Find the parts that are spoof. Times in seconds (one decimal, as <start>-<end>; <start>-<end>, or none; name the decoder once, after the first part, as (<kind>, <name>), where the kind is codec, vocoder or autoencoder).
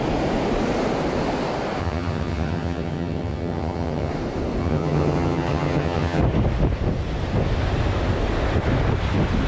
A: 1.8-4.1 (vocoder, HiFi-GAN); 4.6-6.2